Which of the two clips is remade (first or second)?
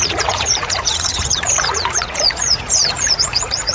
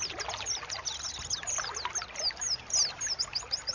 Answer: first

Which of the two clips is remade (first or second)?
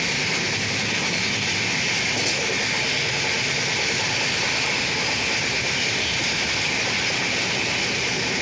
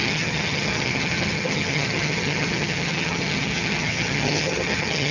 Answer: second